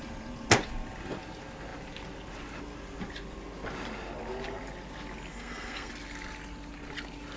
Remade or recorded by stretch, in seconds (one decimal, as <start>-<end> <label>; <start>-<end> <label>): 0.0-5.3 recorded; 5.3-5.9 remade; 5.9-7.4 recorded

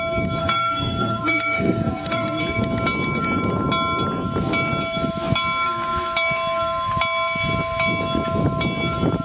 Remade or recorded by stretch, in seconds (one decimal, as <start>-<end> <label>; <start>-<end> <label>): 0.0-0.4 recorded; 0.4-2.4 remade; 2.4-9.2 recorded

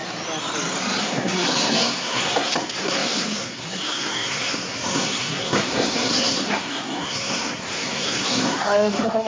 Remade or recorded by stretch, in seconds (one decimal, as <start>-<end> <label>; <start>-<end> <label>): 0.0-1.0 recorded; 1.0-9.3 remade

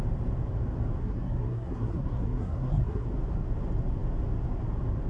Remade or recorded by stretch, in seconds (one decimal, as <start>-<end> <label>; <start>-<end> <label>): 0.0-1.0 recorded; 1.0-3.1 remade; 3.1-5.1 recorded

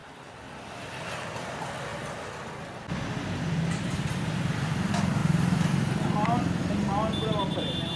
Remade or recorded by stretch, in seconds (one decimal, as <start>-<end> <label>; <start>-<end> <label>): 0.0-8.0 recorded

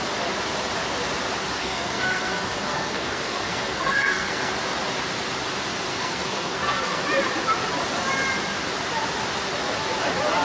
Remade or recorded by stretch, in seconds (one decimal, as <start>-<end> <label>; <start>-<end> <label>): 0.0-1.6 recorded; 1.6-4.5 remade; 4.5-5.9 recorded; 5.9-7.0 remade; 7.0-10.4 recorded